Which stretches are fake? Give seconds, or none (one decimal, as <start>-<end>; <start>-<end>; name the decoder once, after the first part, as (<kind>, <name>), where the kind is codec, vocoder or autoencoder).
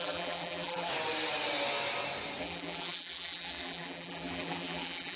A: 0.0-0.9 (vocoder, BigVGAN v2); 2.4-5.2